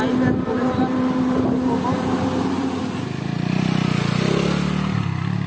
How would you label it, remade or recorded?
recorded